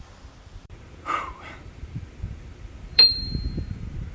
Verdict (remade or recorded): remade